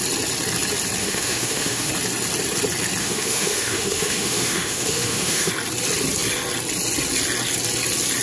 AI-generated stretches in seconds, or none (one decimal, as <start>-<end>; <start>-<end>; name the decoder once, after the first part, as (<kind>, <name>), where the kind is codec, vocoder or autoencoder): 1.0-1.9 (autoencoder, DAC-VAE); 3.0-5.5